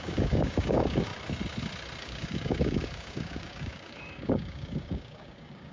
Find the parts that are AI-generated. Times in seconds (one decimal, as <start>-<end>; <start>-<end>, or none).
0.0-1.1; 2.0-5.7